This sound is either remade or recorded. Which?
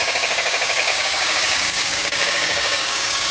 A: remade